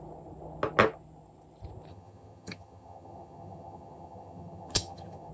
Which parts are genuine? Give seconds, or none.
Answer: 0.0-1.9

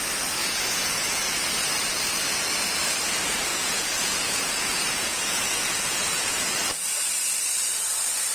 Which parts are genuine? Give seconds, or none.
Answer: 0.0-0.4; 1.3-3.5; 6.5-8.3

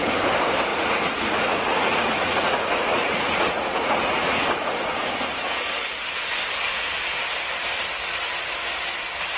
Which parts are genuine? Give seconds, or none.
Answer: 0.0-0.7; 5.1-9.4